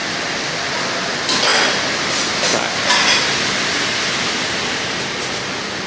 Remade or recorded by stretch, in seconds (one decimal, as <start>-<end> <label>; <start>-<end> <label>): 0.0-5.9 recorded

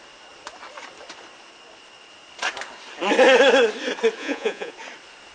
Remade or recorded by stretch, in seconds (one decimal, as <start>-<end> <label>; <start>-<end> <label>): 0.0-4.2 recorded; 4.2-4.7 remade; 4.7-5.3 recorded

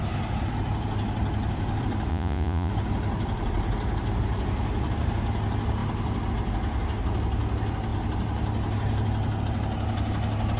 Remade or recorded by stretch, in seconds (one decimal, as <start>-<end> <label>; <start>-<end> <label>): 0.0-2.1 recorded; 2.1-2.7 remade; 2.7-10.6 recorded

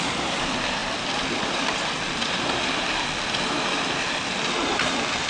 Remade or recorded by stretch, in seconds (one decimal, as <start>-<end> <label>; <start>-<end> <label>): 0.0-5.3 recorded

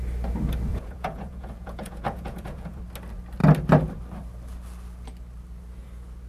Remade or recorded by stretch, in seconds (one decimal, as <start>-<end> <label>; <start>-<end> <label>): 0.0-0.7 recorded; 0.7-2.8 remade; 2.8-6.3 recorded

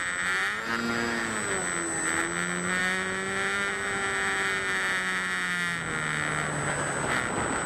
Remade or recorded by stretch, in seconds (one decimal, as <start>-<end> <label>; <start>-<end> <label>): 0.0-7.7 recorded

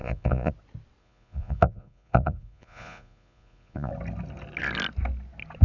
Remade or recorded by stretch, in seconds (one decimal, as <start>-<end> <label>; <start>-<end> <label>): 0.0-0.5 remade; 0.5-1.0 recorded; 1.0-3.9 remade; 3.9-5.6 recorded

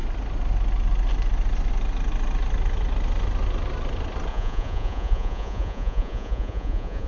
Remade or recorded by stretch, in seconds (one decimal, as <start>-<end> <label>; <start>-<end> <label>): 0.0-4.3 recorded; 4.3-7.1 remade